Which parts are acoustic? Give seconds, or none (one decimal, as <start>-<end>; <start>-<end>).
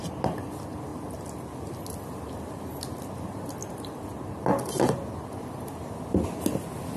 0.0-7.0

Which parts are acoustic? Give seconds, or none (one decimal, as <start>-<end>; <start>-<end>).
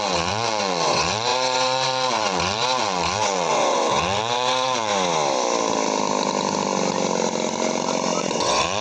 4.9-8.2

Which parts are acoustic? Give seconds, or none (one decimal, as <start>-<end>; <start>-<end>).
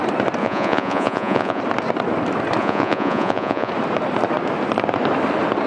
0.0-0.4; 1.6-2.6; 3.7-5.7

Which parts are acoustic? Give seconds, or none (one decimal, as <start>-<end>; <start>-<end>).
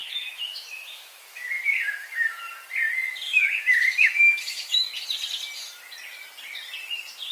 2.5-3.3; 4.9-7.3